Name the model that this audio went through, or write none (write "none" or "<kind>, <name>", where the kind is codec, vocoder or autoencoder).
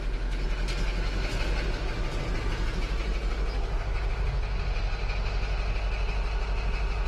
none